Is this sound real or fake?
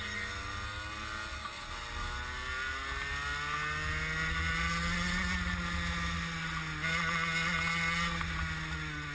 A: real